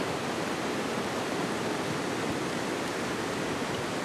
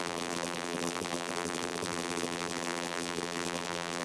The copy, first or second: second